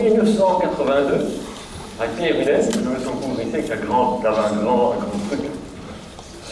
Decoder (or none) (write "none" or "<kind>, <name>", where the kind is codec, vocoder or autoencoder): none